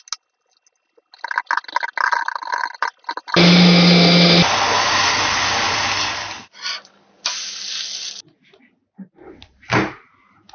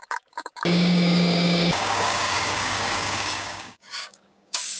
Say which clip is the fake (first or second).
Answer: second